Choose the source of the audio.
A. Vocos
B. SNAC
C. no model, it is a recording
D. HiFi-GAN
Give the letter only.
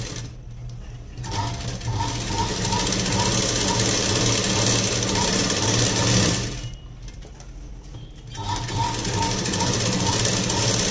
C